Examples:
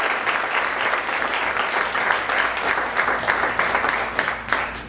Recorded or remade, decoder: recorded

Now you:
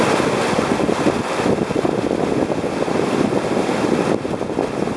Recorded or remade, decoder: recorded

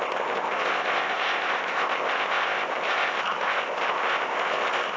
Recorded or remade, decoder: remade, codec, ZipCodec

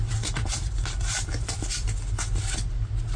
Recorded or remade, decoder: recorded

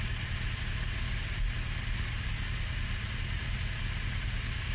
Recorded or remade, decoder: recorded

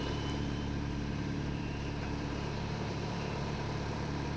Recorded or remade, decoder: remade, vocoder, BigVGAN v2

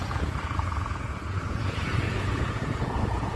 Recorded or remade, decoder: remade, vocoder, Vocos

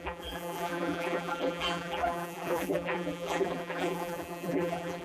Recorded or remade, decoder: remade, vocoder, BigVGAN v2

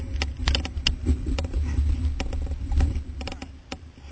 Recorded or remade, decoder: recorded